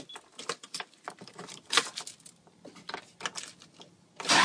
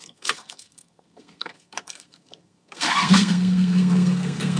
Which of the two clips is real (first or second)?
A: first